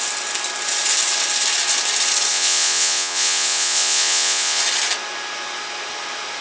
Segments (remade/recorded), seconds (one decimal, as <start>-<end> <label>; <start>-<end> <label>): 0.0-2.3 recorded; 2.3-4.6 remade; 4.6-6.4 recorded